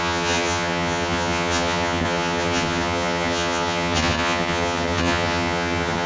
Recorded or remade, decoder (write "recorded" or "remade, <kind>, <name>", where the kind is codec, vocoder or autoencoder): remade, vocoder, HiFi-GAN